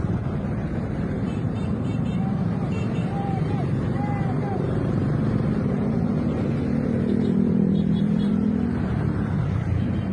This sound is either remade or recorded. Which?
remade